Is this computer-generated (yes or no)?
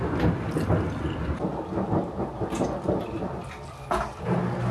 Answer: no